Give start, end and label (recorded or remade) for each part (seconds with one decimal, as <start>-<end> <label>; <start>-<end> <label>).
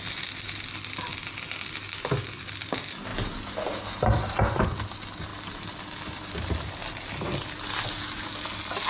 0.0-5.3 recorded; 5.3-6.9 remade; 6.9-8.9 recorded